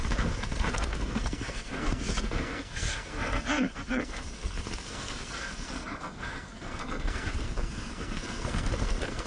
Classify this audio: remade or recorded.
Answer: remade